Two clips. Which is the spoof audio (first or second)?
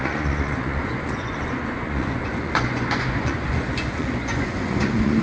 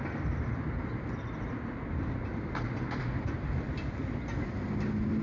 first